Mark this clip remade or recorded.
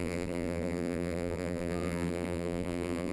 remade